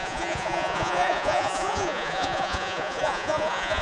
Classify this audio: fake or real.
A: fake